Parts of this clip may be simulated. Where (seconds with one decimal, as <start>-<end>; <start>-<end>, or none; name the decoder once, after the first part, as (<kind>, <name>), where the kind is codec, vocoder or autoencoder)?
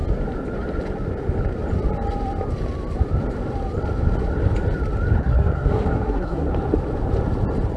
5.2-6.5 (codec, SNAC)